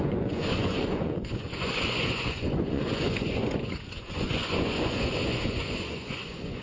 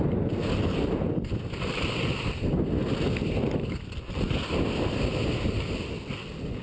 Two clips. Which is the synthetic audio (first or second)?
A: first